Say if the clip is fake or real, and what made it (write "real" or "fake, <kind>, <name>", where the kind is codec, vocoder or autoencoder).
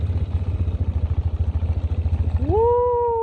real